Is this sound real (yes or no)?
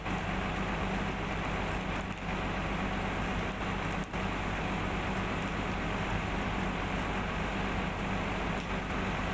yes